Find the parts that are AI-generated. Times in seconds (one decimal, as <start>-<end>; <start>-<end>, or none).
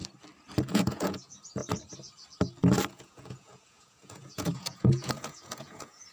0.7-1.6; 2.9-6.1